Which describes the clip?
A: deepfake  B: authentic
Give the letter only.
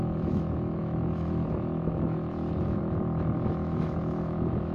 A